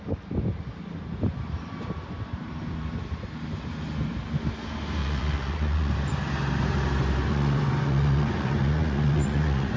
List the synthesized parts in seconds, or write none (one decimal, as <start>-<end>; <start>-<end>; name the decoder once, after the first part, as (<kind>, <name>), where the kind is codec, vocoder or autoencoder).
5.0-5.9 (vocoder, Vocos); 7.3-9.8